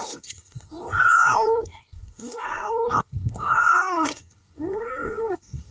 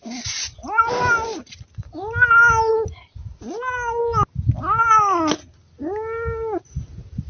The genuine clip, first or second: second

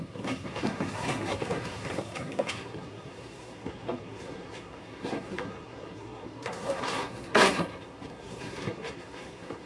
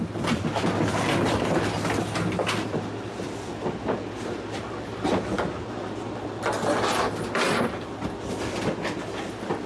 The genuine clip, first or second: second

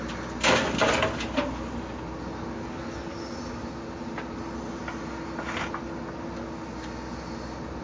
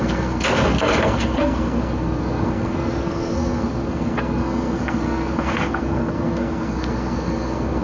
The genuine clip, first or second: first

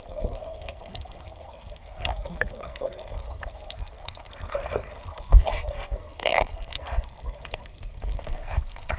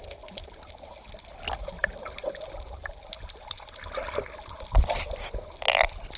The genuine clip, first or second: second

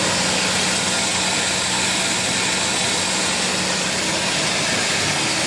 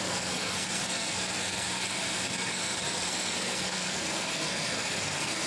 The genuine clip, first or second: first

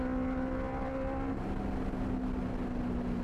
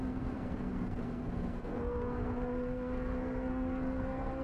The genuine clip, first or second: first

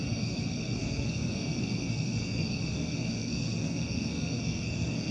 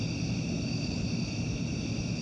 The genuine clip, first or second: second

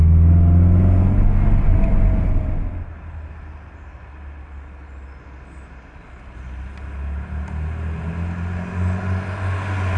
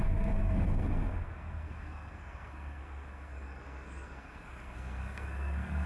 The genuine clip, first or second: first